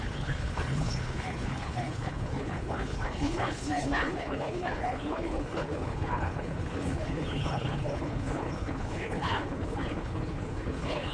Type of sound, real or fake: fake